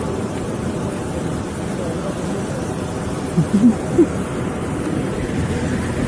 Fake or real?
real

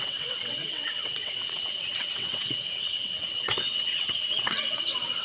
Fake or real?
fake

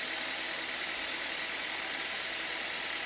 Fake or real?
real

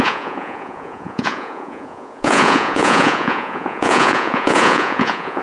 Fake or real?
fake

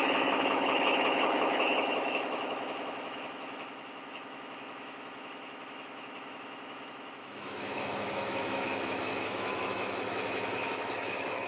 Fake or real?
fake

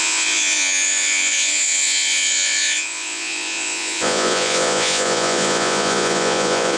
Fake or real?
fake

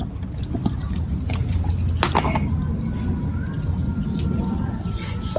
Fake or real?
real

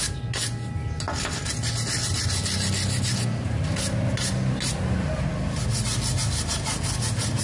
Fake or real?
real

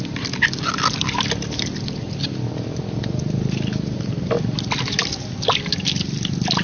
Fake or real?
real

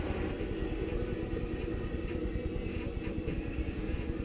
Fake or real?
real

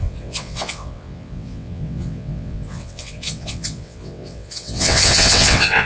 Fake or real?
fake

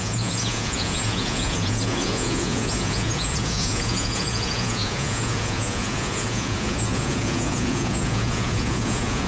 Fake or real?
fake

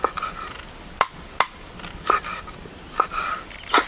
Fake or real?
real